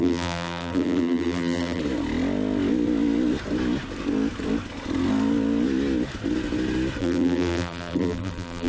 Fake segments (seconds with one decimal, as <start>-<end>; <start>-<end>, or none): 0.0-1.8; 7.0-8.7